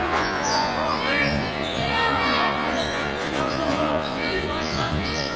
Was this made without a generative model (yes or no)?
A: no